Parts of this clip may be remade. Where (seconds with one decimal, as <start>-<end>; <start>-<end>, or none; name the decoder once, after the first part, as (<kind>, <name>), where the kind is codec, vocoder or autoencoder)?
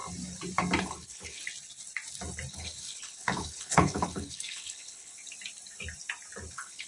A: 0.8-1.4 (codec, HILCodec); 2.5-5.2; 6.5-6.9